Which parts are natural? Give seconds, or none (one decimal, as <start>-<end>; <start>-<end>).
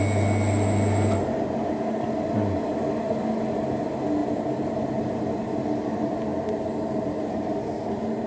0.0-4.2; 4.9-8.3